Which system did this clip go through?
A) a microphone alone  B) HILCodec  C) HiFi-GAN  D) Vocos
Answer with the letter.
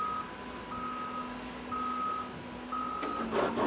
A